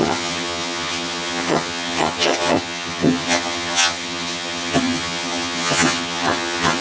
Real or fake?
fake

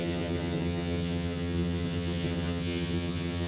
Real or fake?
fake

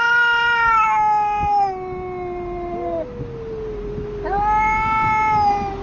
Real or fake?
real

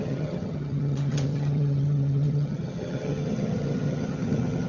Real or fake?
fake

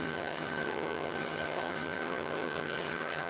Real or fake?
fake